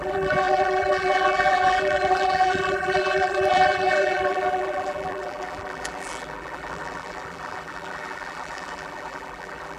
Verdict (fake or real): fake